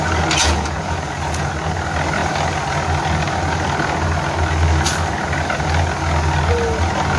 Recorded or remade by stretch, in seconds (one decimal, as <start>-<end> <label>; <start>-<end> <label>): 0.0-0.4 recorded; 0.4-1.5 remade; 1.5-7.2 recorded